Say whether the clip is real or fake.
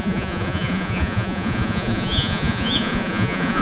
fake